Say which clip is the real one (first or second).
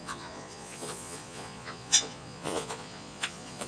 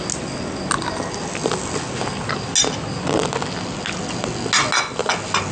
second